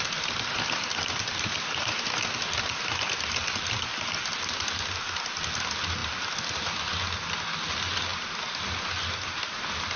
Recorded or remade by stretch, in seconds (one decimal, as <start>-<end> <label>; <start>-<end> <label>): 0.0-10.0 recorded